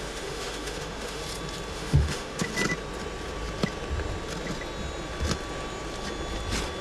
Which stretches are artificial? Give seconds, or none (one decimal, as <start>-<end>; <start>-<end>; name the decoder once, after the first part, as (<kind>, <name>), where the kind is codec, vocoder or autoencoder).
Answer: 0.0-1.2 (autoencoder, DAC-VAE); 1.7-2.5